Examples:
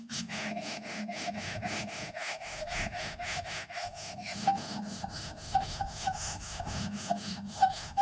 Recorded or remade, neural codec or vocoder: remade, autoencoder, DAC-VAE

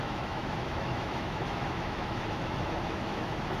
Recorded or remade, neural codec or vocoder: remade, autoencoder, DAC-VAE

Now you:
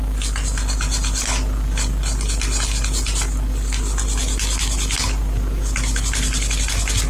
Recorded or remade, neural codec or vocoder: recorded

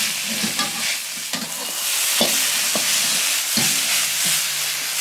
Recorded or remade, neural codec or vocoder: recorded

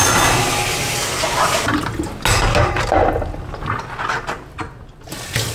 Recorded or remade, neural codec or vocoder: recorded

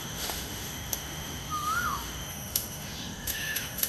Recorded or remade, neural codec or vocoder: remade, autoencoder, DAC-VAE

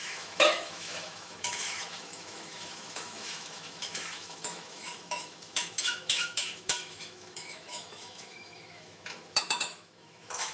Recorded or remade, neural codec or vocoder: remade, autoencoder, DAC-VAE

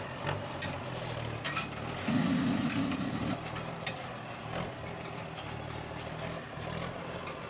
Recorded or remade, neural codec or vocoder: recorded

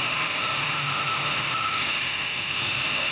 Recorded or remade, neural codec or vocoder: remade, autoencoder, DAC-VAE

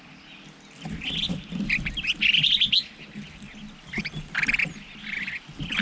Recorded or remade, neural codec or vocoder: recorded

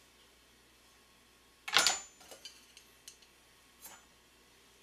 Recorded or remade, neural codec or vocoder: recorded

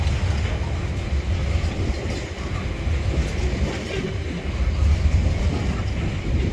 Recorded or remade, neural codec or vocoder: recorded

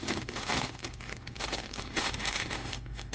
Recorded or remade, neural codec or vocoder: remade, autoencoder, DAC-VAE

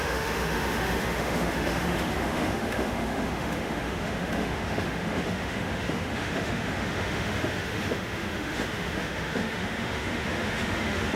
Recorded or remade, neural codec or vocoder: remade, autoencoder, DAC-VAE